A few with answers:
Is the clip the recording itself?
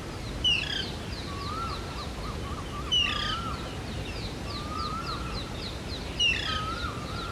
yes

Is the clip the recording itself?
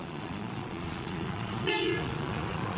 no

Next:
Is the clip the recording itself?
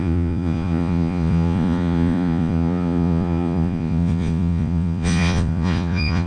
no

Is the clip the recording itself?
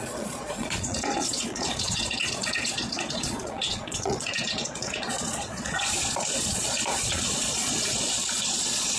no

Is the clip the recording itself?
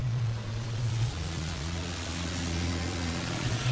no